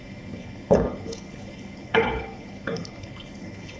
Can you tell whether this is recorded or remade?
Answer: remade